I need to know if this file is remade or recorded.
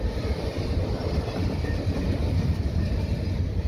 remade